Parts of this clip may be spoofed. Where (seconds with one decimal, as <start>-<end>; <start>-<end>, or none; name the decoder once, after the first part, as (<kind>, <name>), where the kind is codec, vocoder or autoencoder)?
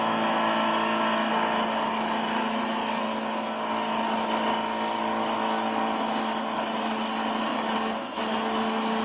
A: none